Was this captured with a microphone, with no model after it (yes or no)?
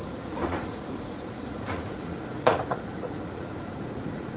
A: no